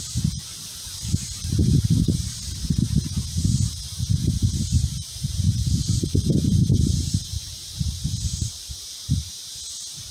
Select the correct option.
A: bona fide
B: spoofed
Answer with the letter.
B